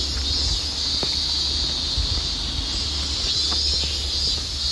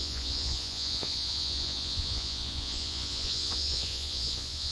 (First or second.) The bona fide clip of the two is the first